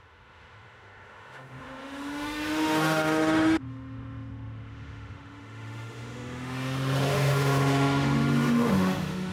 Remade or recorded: remade